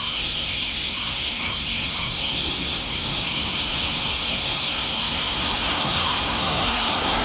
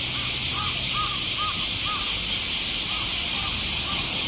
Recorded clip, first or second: second